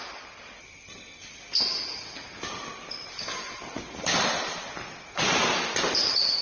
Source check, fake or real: real